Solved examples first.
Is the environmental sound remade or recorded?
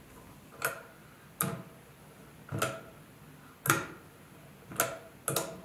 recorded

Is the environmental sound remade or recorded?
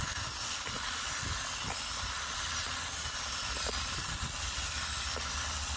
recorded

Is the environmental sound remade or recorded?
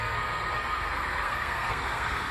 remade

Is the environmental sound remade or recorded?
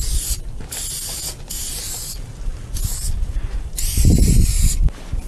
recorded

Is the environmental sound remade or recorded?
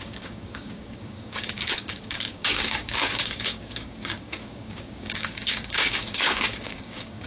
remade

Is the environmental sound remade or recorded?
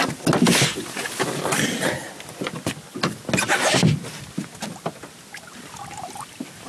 recorded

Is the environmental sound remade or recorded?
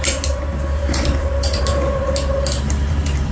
remade